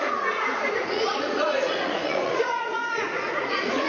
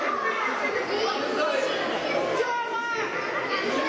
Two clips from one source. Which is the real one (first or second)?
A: second